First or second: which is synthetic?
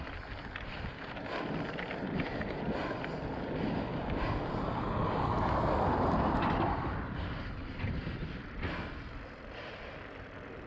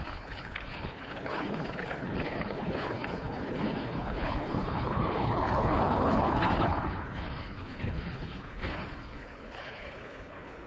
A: second